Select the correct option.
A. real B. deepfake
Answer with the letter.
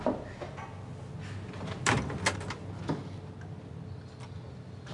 A